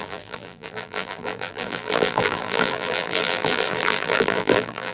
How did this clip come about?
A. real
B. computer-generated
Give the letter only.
B